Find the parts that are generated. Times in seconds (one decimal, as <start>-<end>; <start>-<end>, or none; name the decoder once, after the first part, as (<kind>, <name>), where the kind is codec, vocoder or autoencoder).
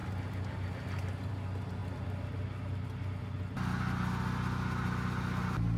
none